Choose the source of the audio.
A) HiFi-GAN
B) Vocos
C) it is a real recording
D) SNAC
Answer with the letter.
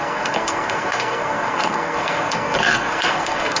D